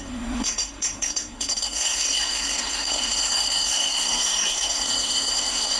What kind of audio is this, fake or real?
fake